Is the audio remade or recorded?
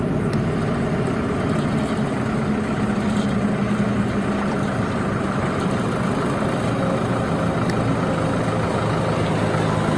recorded